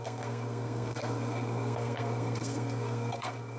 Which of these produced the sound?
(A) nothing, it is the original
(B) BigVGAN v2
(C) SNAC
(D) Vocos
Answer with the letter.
C